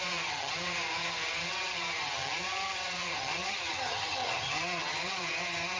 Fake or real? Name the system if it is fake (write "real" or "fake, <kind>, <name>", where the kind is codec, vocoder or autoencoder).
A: fake, vocoder, HiFi-GAN